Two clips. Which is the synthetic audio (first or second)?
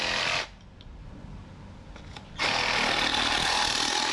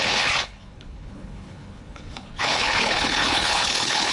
second